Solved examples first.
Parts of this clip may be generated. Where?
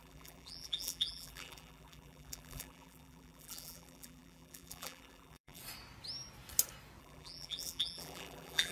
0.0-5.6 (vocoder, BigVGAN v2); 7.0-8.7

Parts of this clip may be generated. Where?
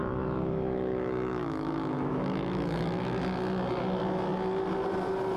0.0-3.2 (autoencoder, DAC-VAE)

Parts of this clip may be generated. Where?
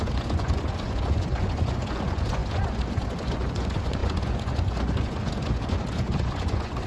0.0-6.9 (vocoder, Vocos)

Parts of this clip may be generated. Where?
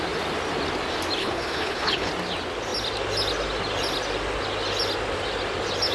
1.2-2.1 (codec, HILCodec)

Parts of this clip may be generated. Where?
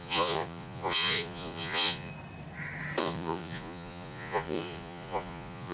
0.0-2.1 (vocoder, Vocos); 3.0-5.7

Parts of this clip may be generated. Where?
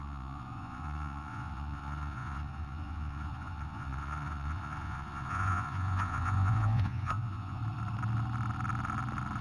0.0-7.6 (vocoder, Vocos)